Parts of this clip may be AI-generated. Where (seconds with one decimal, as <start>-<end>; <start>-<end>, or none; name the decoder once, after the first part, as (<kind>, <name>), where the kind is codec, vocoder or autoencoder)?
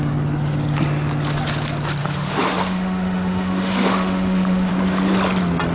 2.0-4.7 (autoencoder, DAC-VAE)